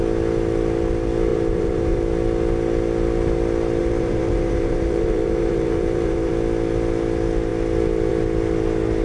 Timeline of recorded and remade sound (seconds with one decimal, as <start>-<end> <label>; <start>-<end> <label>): 0.0-1.3 recorded; 1.3-2.0 remade; 2.0-3.8 recorded; 3.8-6.3 remade; 6.3-9.0 recorded